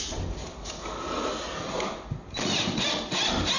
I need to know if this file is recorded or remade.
recorded